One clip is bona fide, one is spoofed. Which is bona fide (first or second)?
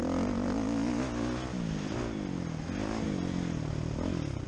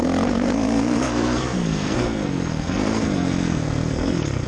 first